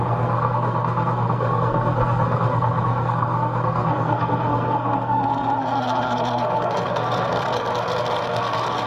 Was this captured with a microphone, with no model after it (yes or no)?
no